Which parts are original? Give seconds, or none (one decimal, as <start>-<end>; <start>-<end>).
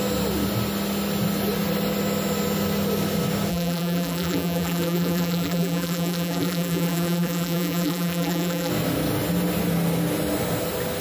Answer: 0.0-3.5; 8.7-11.0